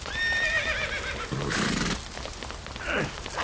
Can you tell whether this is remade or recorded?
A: recorded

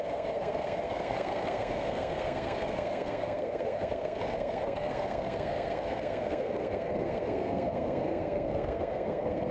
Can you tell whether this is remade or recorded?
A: remade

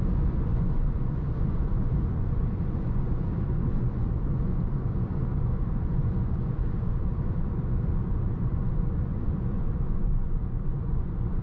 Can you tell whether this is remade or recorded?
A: remade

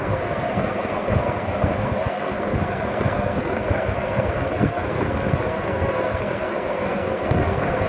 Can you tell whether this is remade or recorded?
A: remade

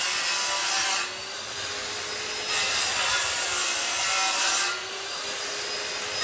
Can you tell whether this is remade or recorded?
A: recorded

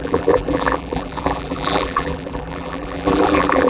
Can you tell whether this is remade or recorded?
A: remade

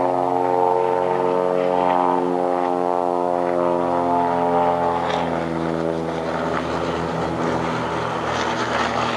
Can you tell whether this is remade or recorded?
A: recorded